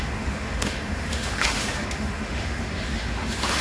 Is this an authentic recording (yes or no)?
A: no